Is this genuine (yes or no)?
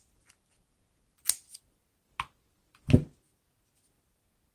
yes